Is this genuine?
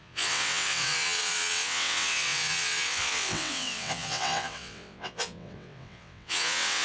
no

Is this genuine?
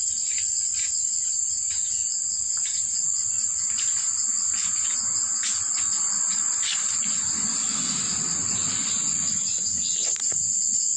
yes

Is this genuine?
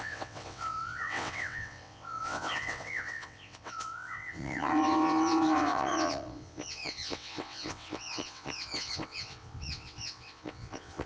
no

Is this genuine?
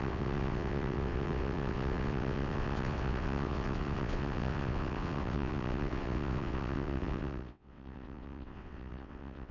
no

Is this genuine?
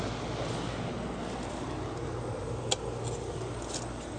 yes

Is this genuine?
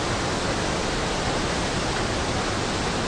yes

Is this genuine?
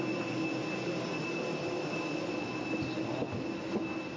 yes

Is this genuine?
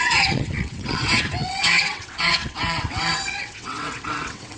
no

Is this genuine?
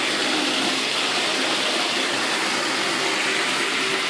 yes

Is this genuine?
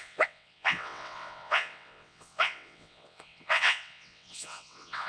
no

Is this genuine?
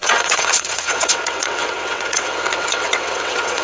no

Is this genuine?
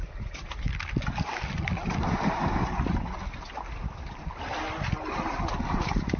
yes